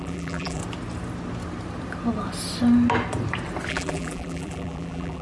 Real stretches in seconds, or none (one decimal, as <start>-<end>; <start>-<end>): 0.6-3.7